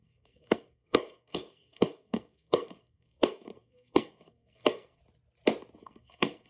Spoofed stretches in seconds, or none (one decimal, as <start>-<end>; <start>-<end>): 0.0-5.0; 5.8-6.5